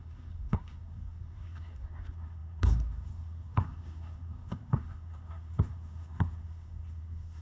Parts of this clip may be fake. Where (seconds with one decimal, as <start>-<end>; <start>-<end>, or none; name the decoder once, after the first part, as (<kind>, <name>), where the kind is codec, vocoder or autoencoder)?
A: 0.0-7.4 (codec, SNAC)